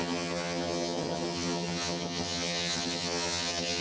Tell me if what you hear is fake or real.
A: fake